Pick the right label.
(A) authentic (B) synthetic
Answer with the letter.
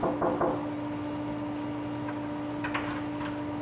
A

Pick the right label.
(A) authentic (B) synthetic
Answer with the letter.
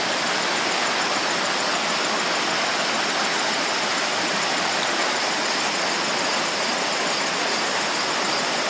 A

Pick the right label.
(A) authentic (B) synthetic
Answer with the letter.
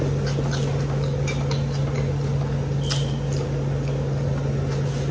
A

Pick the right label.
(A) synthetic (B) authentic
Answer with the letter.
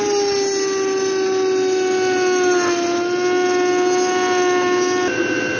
B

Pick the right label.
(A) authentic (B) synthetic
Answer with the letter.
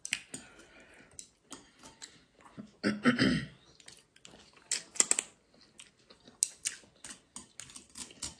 A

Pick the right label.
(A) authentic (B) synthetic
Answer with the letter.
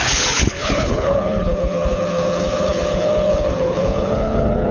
B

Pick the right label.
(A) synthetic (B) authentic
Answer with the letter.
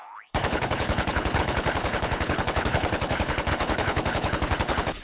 A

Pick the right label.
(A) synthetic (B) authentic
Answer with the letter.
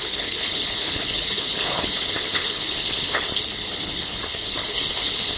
A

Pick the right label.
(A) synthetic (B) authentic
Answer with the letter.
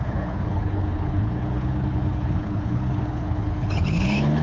A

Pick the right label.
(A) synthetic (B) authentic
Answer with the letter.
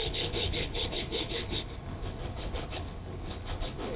A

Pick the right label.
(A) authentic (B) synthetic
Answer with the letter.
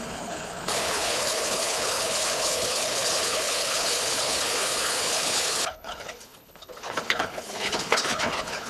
B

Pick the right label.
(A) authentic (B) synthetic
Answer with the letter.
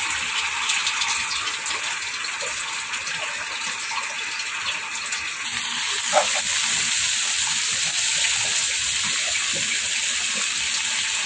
A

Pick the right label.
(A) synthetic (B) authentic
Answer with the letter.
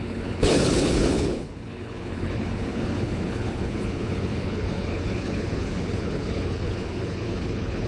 A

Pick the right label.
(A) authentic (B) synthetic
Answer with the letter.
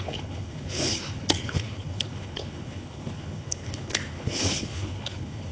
B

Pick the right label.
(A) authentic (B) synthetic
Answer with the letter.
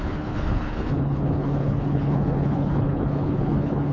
B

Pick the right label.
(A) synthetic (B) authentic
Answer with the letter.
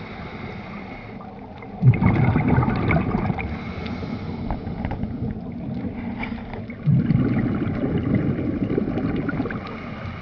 B